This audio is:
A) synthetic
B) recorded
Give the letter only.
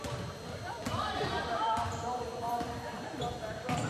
A